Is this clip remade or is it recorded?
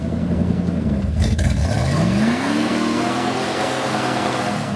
remade